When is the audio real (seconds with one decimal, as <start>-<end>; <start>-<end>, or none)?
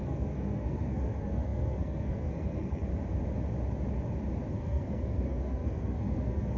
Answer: 2.9-4.5